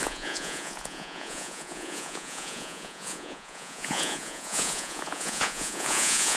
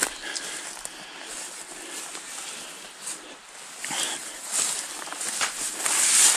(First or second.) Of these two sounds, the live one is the second